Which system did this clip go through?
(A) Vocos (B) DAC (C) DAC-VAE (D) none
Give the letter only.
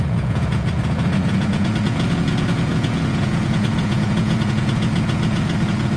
A